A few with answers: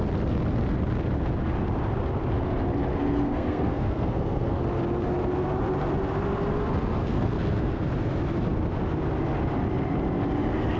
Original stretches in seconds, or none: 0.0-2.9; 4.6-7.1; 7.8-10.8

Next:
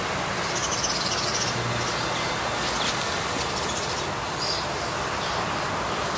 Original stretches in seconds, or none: 0.0-6.2

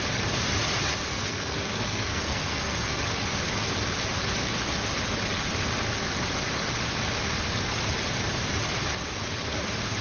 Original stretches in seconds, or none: 0.0-1.1; 3.0-10.0

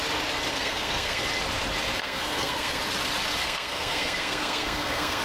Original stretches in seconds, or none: 0.0-0.5; 1.2-2.0; 2.8-3.4